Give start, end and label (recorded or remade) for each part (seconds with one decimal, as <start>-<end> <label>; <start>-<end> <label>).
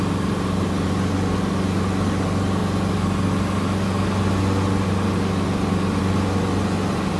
0.0-7.2 recorded